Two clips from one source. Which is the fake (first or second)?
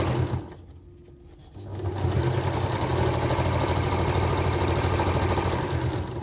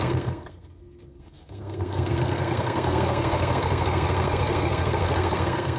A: second